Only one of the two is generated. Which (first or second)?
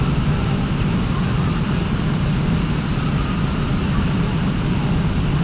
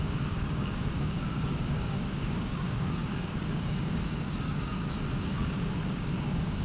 second